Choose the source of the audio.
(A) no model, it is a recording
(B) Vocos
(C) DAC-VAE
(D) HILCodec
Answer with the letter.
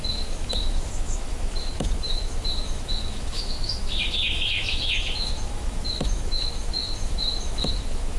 C